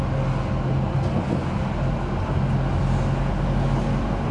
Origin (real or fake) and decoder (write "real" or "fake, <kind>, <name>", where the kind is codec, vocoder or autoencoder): real